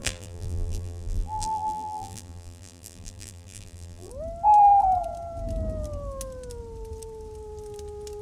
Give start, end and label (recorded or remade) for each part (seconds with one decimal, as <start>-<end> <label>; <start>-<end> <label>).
0.0-4.1 remade; 4.1-8.2 recorded